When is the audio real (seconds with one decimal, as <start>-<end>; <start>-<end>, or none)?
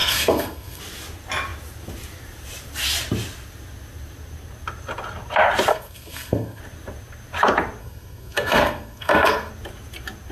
0.8-5.7; 6.6-7.8; 9.5-10.3